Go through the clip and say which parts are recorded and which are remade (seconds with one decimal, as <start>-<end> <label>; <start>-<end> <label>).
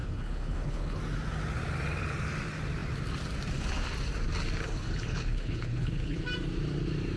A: 0.0-1.0 remade; 1.0-4.6 recorded; 4.6-6.2 remade; 6.2-7.2 recorded